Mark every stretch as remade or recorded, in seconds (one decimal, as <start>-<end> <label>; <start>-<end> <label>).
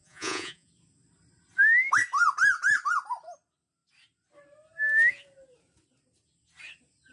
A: 0.0-0.7 remade; 0.7-7.1 recorded